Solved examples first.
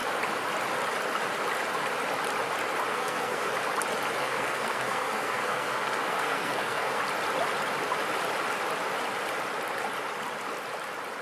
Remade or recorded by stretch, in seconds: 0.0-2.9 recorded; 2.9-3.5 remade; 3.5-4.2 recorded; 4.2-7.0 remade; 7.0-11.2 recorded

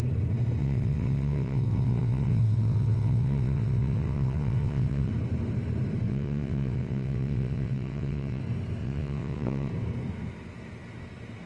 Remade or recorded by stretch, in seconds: 0.0-0.6 recorded; 0.6-5.1 remade; 5.1-6.1 recorded; 6.1-8.4 remade; 8.4-8.8 recorded; 8.8-9.7 remade; 9.7-11.5 recorded

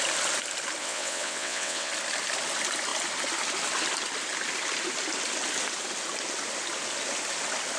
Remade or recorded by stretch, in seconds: 0.0-0.8 recorded; 0.8-1.9 remade; 1.9-7.8 recorded

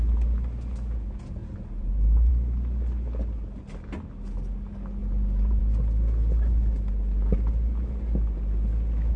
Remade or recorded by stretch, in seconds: 0.0-1.4 recorded; 1.4-2.3 remade; 2.3-5.0 recorded; 5.0-5.6 remade; 5.6-9.2 recorded

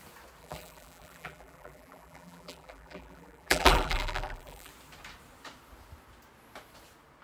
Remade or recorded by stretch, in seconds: 0.0-0.4 recorded; 0.4-4.7 remade; 4.7-7.2 recorded